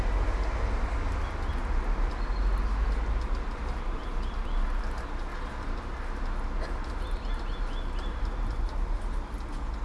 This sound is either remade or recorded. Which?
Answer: recorded